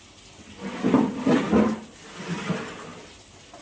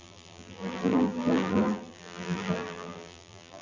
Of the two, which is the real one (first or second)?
first